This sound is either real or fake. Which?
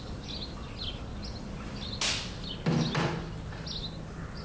real